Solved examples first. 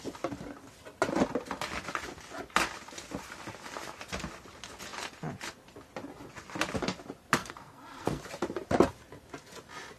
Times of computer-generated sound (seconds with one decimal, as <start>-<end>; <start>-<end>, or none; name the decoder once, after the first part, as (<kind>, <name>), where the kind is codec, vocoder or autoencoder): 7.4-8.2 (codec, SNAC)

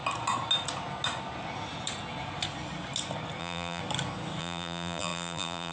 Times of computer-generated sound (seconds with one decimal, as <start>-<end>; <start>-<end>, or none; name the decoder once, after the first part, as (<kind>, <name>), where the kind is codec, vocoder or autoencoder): 3.4-3.8 (vocoder, BigVGAN v2); 4.4-5.7

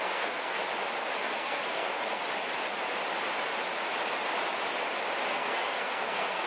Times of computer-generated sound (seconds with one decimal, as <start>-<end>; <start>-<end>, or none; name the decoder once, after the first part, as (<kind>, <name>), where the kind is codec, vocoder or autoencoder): 0.0-0.6 (codec, SNAC); 1.2-2.2; 5.3-6.5

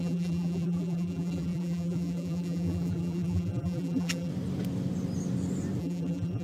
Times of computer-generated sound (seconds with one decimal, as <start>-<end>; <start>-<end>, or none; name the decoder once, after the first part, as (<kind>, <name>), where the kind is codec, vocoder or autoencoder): 0.0-4.3 (vocoder, BigVGAN v2); 5.8-6.4